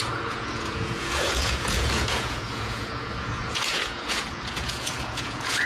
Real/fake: fake